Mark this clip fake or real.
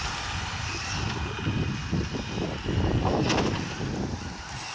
real